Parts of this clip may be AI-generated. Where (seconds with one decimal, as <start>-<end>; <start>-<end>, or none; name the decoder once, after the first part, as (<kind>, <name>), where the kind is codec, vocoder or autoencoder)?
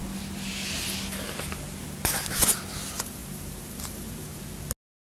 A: 3.2-4.4 (vocoder, BigVGAN v2)